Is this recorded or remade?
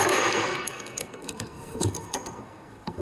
remade